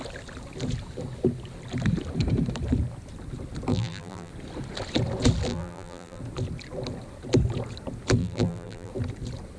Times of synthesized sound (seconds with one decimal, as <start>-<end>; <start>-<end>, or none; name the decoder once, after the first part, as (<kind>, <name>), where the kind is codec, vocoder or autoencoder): 3.7-4.3 (vocoder, BigVGAN v2); 5.5-6.2; 8.2-8.9